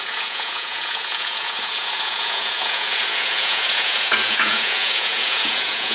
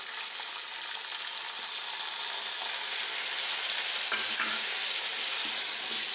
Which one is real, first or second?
second